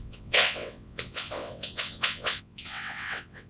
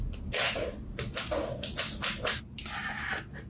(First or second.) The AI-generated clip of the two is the first